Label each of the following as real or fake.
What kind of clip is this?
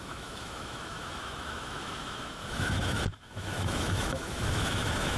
fake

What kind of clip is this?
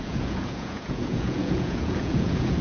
fake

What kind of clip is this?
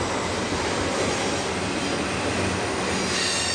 real